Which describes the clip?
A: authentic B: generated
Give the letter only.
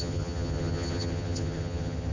B